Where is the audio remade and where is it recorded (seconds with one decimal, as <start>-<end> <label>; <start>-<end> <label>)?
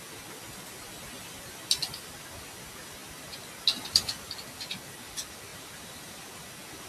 0.0-5.5 recorded; 5.5-6.3 remade; 6.3-6.9 recorded